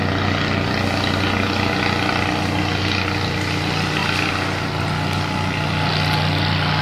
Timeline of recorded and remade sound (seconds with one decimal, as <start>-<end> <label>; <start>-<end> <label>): 0.0-6.8 recorded